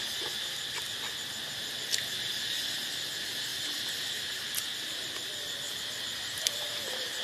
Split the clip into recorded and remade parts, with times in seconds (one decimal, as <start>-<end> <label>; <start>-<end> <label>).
0.0-3.5 recorded; 3.5-4.6 remade; 4.6-7.2 recorded